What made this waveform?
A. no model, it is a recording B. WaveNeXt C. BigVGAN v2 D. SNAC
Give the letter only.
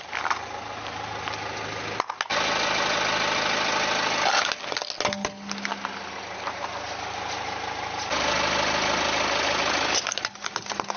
A